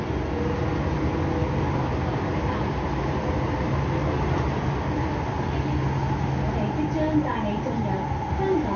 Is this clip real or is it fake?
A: real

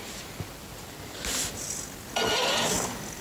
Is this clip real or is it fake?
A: real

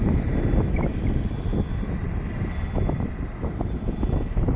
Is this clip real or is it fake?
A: real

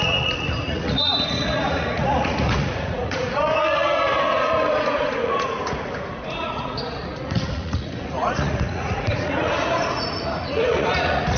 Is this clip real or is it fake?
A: fake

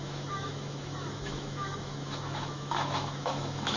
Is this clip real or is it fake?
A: fake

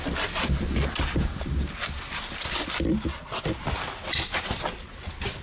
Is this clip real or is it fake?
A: real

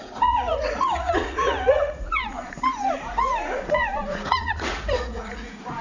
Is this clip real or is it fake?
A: fake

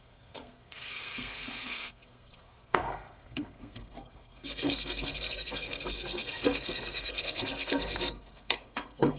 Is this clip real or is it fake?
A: fake